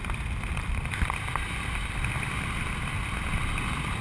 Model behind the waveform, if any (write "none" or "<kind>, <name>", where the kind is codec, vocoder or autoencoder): none